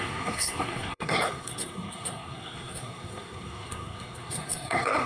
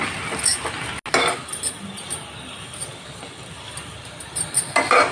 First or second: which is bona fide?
second